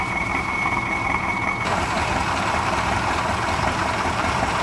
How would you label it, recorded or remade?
remade